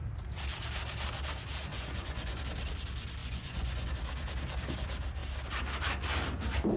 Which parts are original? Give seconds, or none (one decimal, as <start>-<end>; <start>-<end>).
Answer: 0.0-1.7; 2.4-3.2; 3.9-6.8